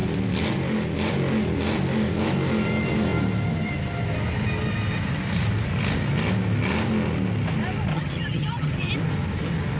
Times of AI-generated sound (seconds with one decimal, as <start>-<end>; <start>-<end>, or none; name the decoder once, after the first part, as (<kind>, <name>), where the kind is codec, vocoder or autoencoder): 7.9-8.9 (vocoder, HiFi-GAN)